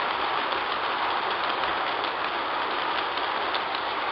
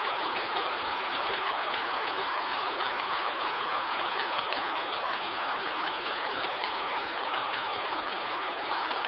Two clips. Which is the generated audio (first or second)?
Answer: second